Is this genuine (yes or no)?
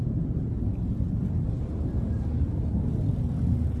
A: yes